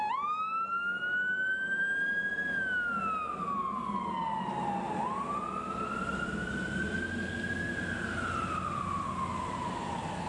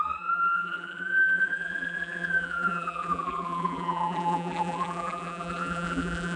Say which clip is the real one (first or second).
first